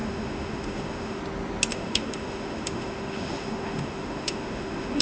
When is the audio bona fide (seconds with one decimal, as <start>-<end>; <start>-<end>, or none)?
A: 1.2-1.7